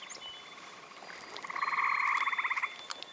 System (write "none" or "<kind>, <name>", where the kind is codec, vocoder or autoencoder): none